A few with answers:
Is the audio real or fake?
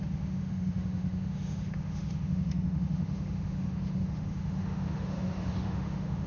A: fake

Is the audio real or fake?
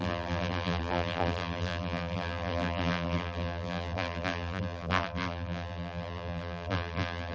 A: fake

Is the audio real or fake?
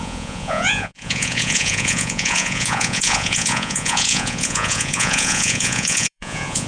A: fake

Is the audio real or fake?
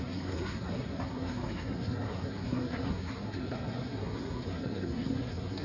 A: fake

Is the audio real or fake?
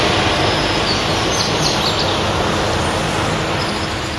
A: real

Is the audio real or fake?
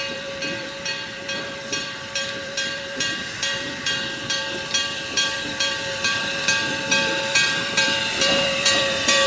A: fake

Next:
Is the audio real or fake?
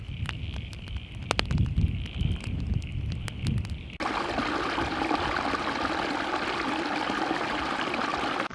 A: real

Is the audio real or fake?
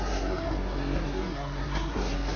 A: fake